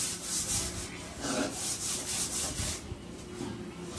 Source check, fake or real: real